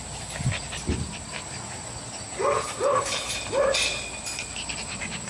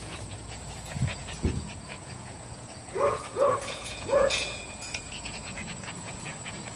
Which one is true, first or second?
first